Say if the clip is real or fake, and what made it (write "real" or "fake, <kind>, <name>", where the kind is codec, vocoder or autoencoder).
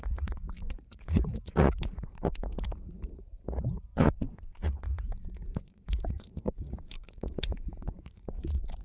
fake, vocoder, Vocos